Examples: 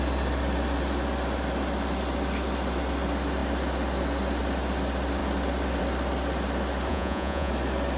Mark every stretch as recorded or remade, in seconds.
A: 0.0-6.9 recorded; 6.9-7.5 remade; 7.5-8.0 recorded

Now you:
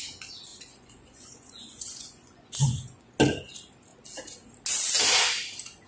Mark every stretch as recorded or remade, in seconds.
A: 0.0-0.5 recorded; 0.5-3.1 remade; 3.1-5.9 recorded

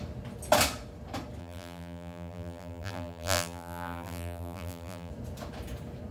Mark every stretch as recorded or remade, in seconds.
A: 0.0-1.4 recorded; 1.4-5.1 remade; 5.1-6.1 recorded

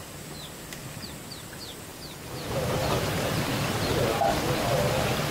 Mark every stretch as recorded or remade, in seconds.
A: 0.0-5.3 recorded